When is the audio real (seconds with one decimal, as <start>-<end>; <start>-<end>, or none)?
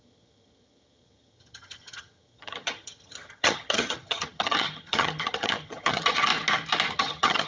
6.3-6.9